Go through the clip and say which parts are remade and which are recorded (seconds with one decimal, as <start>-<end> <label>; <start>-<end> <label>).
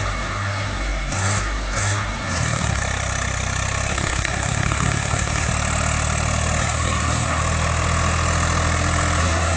0.0-2.8 remade; 2.8-3.9 recorded; 3.9-5.5 remade; 5.5-6.6 recorded; 6.6-7.4 remade; 7.4-9.2 recorded; 9.2-9.6 remade